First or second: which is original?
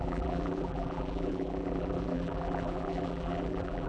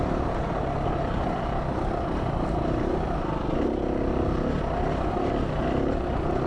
second